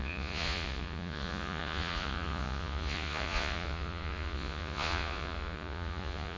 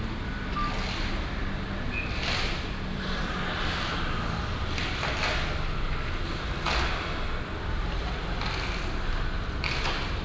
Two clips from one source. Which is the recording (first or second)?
second